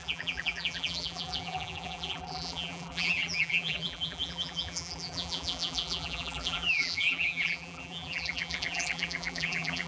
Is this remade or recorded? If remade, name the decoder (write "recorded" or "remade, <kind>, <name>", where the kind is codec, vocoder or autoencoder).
remade, vocoder, BigVGAN v2